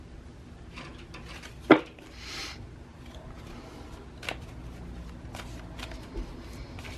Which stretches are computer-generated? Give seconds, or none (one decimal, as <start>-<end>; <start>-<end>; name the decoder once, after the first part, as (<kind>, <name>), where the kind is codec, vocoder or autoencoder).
0.0-0.9 (vocoder, BigVGAN v2); 1.5-2.9; 5.8-7.0